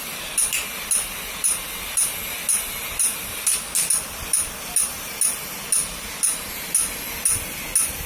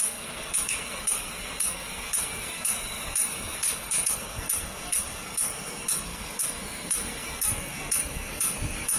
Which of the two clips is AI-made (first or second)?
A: second